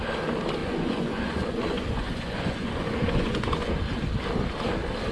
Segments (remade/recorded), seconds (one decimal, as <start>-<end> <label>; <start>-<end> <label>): 0.0-0.6 recorded; 0.6-3.7 remade; 3.7-5.1 recorded